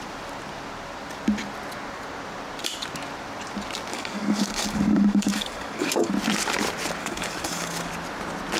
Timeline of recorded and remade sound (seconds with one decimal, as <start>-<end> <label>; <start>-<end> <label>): 0.0-3.9 recorded; 3.9-6.1 remade; 6.1-7.0 recorded; 7.0-7.9 remade; 7.9-8.6 recorded